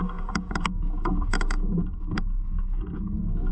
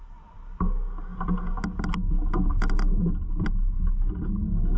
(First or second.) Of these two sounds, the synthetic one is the first